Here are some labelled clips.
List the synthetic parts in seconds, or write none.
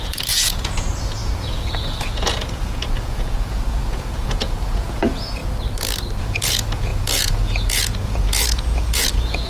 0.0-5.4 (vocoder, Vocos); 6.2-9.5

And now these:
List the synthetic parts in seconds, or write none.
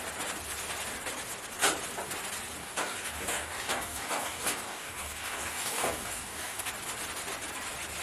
2.6-6.7 (codec, DAC)